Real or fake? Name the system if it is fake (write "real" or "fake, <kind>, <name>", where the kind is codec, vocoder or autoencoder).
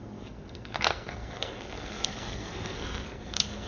fake, codec, SNAC